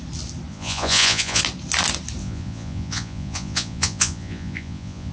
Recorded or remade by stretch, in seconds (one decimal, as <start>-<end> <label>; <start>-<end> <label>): 0.0-0.5 recorded; 0.5-1.4 remade; 1.4-2.2 recorded; 2.2-5.1 remade

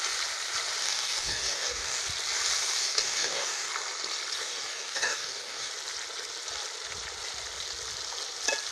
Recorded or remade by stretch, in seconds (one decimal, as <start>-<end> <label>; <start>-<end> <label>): 0.0-0.8 recorded; 0.8-2.0 remade; 2.0-2.8 recorded; 2.8-3.7 remade; 3.7-4.4 recorded; 4.4-5.7 remade; 5.7-8.7 recorded

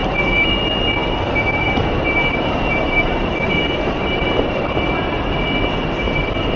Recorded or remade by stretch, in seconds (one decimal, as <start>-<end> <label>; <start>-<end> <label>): 0.0-0.5 remade; 0.5-1.0 recorded; 1.0-4.9 remade; 4.9-6.6 recorded

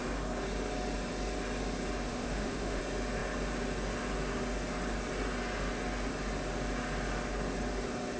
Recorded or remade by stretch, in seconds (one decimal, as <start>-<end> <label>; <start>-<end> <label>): 0.0-2.1 recorded; 2.1-2.8 remade; 2.8-8.2 recorded

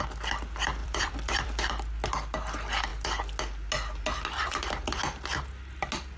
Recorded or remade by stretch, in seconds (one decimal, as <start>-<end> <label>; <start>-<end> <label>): 0.0-0.8 recorded; 0.8-1.6 remade; 1.6-6.2 recorded

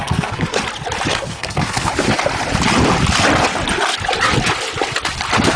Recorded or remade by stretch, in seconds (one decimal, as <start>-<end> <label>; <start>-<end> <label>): 0.0-0.6 remade; 0.6-1.1 recorded; 1.1-1.9 remade; 1.9-5.6 recorded

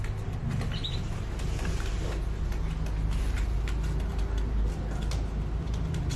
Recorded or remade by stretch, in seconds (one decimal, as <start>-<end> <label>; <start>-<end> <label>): 0.0-6.2 recorded